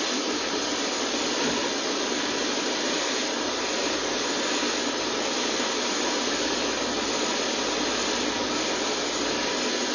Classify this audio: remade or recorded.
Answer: recorded